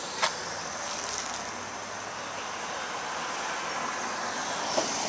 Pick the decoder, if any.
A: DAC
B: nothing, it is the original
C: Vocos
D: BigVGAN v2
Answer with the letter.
B